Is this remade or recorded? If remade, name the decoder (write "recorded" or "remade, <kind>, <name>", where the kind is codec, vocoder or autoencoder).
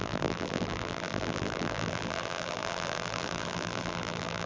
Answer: remade, vocoder, BigVGAN v2